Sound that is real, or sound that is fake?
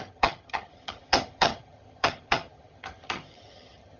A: fake